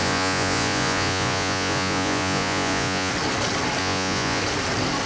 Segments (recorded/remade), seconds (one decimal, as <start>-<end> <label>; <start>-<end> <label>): 0.0-3.1 remade; 3.1-3.8 recorded; 3.8-4.4 remade; 4.4-5.1 recorded